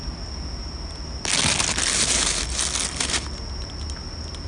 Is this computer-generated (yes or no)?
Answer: no